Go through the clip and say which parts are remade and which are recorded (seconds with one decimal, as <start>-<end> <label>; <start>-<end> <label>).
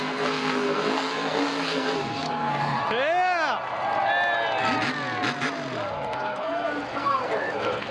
0.0-2.8 remade; 2.8-5.9 recorded; 5.9-7.9 remade